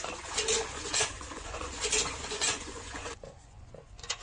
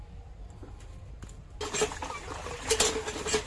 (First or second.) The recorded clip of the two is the second